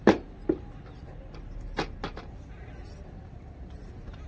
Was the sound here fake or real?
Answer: real